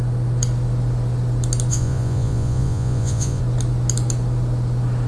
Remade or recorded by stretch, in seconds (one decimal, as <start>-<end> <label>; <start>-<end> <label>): 0.0-1.7 recorded; 1.7-3.4 remade; 3.4-5.1 recorded